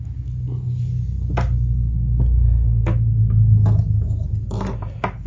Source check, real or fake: real